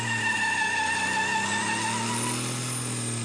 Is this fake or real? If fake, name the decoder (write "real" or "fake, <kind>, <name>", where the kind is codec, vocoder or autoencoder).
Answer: real